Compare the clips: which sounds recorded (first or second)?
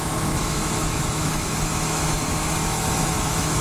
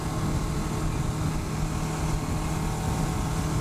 second